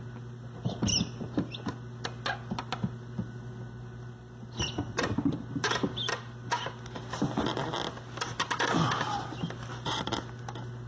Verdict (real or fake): real